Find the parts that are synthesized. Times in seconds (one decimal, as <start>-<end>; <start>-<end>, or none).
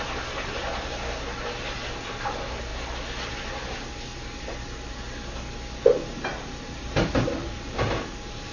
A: 6.3-7.9